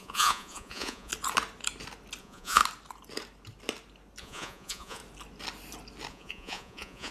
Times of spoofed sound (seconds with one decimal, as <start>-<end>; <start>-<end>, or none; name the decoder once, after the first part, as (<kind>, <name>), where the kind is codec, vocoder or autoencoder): 0.0-1.1 (vocoder, Vocos); 2.2-2.6; 4.2-5.0; 6.1-7.1